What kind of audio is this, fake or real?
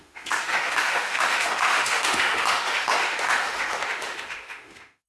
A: fake